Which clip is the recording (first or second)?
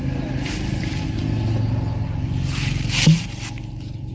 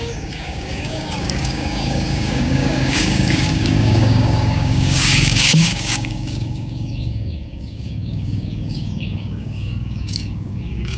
first